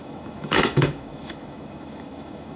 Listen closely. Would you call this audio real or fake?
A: fake